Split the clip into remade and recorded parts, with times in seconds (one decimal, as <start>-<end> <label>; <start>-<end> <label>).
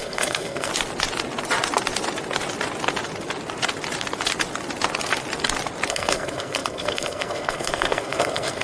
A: 0.0-0.7 remade; 0.7-5.9 recorded; 5.9-8.6 remade